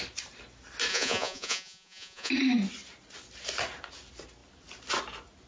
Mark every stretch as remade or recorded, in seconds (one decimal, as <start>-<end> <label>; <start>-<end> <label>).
0.0-0.9 recorded; 0.9-2.3 remade; 2.3-5.5 recorded